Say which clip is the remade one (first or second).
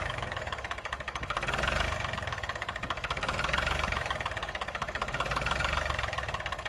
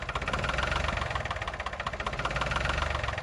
first